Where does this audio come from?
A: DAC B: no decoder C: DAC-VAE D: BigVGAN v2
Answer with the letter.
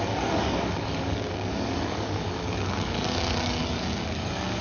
A